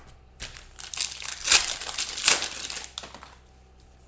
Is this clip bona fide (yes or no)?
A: yes